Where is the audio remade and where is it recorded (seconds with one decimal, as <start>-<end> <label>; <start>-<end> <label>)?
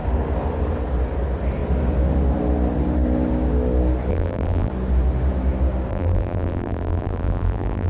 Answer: 0.0-4.1 recorded; 4.1-4.7 remade; 4.7-5.9 recorded; 5.9-7.9 remade